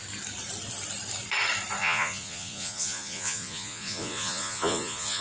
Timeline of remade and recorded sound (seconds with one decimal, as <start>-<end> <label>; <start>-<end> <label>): 0.0-1.8 recorded; 1.8-5.2 remade